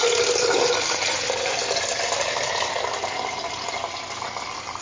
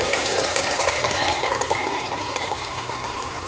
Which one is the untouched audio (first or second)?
first